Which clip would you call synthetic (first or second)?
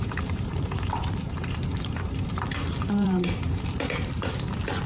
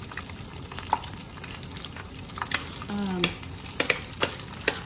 first